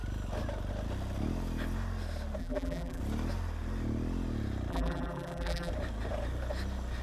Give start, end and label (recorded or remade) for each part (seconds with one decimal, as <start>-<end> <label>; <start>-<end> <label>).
0.0-2.4 recorded; 2.4-3.0 remade; 3.0-4.7 recorded; 4.7-5.7 remade; 5.7-7.0 recorded